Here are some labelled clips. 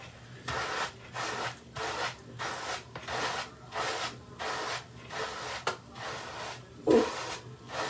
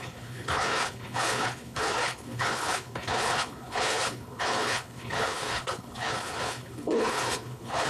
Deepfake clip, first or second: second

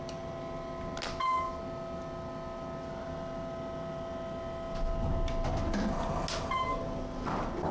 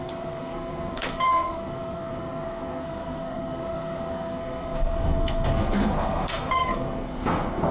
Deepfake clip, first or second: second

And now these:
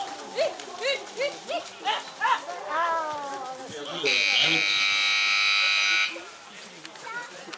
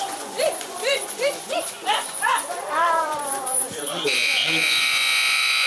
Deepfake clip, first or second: second